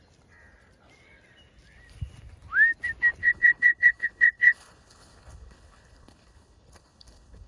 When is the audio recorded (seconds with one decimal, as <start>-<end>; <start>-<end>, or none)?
0.0-3.2